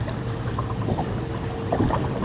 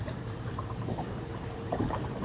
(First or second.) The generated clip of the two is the second